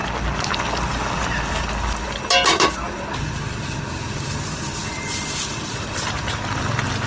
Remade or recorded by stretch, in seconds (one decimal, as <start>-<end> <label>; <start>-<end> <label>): 0.0-4.3 recorded; 4.3-7.1 remade